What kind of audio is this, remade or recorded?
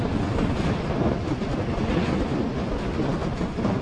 recorded